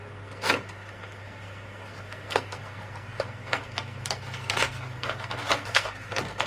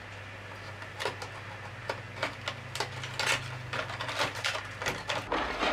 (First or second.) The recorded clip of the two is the second